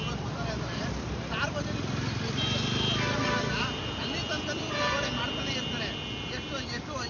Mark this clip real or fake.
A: real